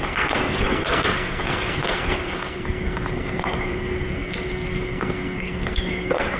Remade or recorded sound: remade